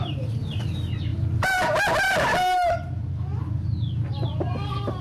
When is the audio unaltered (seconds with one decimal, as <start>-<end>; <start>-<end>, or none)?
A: 0.0-5.0